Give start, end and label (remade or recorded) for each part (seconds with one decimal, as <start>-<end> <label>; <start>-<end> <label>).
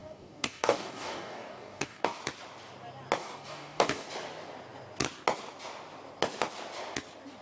0.0-2.2 remade; 2.2-3.2 recorded; 3.2-4.1 remade; 4.1-7.4 recorded